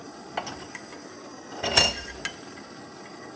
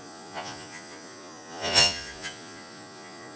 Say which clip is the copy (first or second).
second